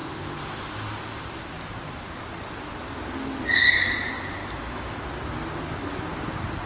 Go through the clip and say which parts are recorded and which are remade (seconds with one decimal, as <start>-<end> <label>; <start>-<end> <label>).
0.0-4.4 recorded; 4.4-5.0 remade; 5.0-6.7 recorded